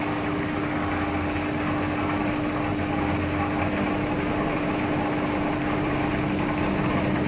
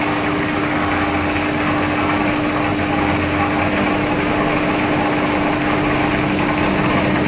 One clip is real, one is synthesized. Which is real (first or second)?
second